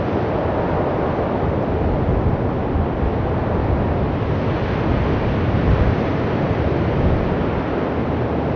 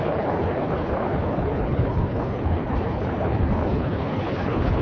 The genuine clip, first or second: first